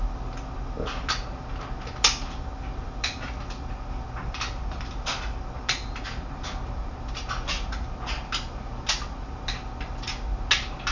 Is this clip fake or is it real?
real